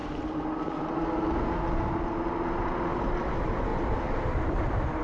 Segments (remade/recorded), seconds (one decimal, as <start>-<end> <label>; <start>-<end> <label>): 0.0-5.0 recorded